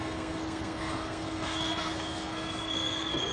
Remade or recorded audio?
remade